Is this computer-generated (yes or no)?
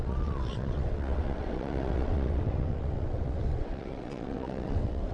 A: yes